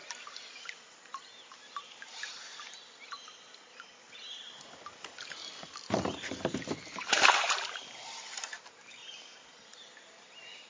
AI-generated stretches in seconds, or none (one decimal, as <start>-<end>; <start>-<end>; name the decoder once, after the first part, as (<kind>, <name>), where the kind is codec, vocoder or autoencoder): 0.0-2.5 (vocoder, BigVGAN v2); 7.0-9.0; 9.9-10.7